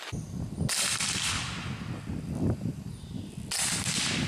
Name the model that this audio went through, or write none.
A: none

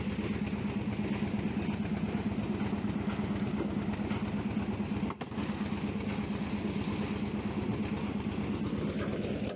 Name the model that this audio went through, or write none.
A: none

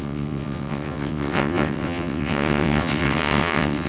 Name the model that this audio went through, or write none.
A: vocoder, WaveNeXt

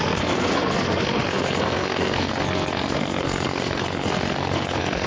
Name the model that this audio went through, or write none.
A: codec, SNAC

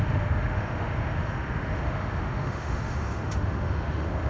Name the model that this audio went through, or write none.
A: autoencoder, DAC-VAE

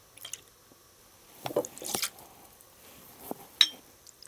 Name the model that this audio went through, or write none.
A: none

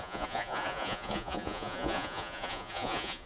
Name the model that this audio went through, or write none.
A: vocoder, Vocos